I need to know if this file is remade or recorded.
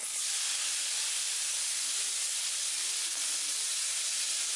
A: recorded